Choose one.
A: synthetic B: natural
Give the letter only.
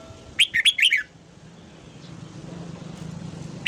B